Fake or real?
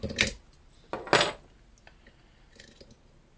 real